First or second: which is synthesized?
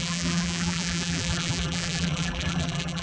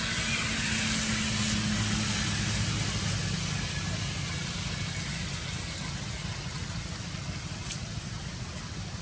first